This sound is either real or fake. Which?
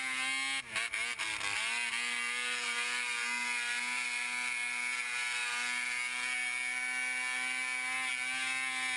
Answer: real